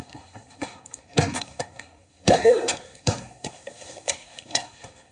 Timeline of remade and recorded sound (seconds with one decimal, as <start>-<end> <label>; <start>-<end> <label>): 0.0-5.1 remade